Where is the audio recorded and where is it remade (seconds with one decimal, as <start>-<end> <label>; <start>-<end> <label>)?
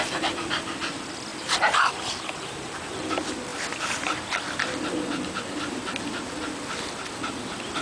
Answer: 0.0-1.3 recorded; 1.3-2.0 remade; 2.0-7.8 recorded